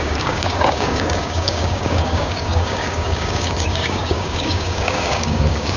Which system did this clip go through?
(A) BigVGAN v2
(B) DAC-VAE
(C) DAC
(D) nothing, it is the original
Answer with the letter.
C